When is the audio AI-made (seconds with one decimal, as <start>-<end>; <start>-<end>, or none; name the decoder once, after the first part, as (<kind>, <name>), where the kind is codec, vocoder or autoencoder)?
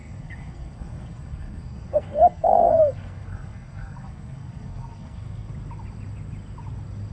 0.0-5.5 (codec, SNAC)